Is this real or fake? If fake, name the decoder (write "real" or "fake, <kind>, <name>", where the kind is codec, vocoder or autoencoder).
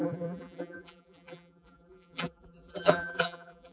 fake, vocoder, BigVGAN v2